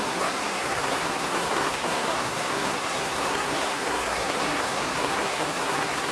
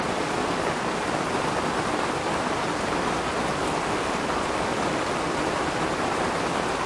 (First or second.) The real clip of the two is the second